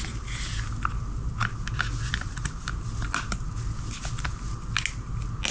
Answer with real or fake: real